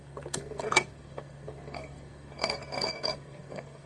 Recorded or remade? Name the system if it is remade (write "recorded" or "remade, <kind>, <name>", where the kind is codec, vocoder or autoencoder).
remade, codec, SNAC